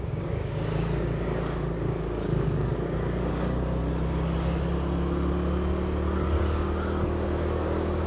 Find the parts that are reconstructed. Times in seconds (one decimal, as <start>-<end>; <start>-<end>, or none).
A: 0.0-3.8; 6.4-8.1